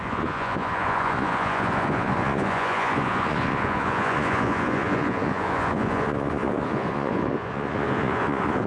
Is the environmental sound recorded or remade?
remade